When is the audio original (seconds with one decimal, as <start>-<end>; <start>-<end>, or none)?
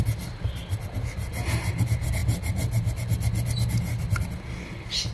0.0-5.1